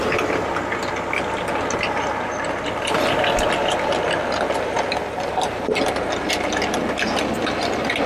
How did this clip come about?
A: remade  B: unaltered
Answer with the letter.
B